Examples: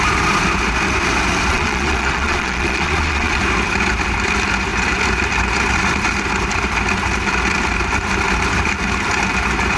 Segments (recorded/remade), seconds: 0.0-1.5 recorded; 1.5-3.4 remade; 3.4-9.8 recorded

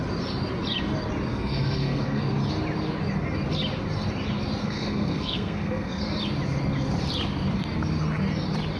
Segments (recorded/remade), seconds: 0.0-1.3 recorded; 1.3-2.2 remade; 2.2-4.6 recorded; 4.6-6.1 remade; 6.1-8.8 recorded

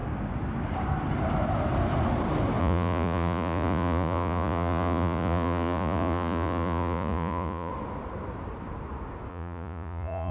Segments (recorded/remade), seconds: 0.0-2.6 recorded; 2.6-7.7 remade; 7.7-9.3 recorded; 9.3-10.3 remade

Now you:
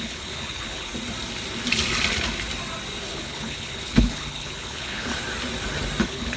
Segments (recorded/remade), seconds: 0.0-0.9 remade; 0.9-3.0 recorded; 3.0-5.1 remade; 5.1-6.0 recorded; 6.0-6.4 remade

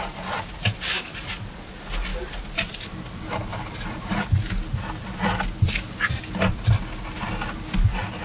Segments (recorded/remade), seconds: 0.0-8.2 recorded

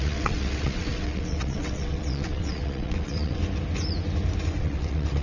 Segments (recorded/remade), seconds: 0.0-3.4 remade; 3.4-4.6 recorded; 4.6-5.2 remade

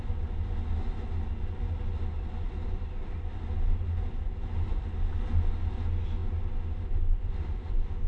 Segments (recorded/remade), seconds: 0.0-8.1 recorded

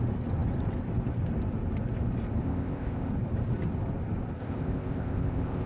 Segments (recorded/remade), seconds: 0.0-2.4 recorded; 2.4-3.1 remade; 3.1-4.4 recorded; 4.4-5.7 remade